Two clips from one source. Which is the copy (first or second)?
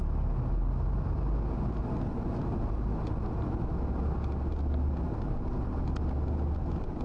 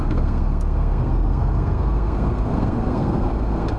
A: second